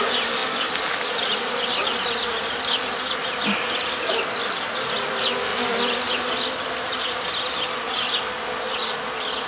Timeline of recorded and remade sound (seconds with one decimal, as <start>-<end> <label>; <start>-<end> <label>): 0.0-9.5 recorded